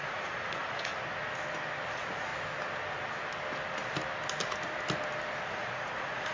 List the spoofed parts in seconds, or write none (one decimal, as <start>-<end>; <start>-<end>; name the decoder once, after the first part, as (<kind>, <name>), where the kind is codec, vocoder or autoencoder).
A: 0.0-0.9 (vocoder, Vocos); 1.9-2.3; 5.5-6.3